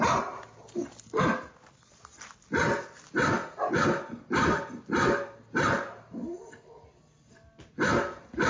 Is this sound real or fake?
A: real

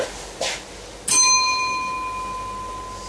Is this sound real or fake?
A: real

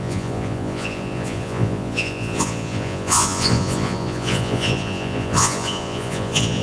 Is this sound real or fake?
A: fake